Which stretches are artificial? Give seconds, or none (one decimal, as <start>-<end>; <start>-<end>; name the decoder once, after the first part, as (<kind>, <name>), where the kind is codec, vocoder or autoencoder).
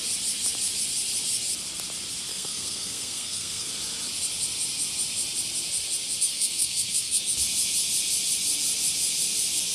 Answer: 2.3-3.7 (codec, SNAC); 6.3-7.2